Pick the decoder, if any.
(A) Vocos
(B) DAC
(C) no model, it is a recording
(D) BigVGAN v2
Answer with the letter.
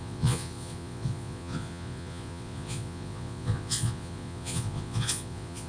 A